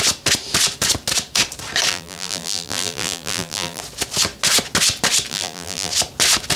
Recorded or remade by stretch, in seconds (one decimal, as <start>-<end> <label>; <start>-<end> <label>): 0.0-1.9 recorded; 1.9-3.8 remade; 3.8-5.3 recorded; 5.3-5.9 remade; 5.9-6.6 recorded